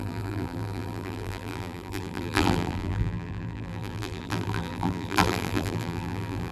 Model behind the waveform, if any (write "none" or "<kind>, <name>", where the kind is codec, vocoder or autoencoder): vocoder, BigVGAN v2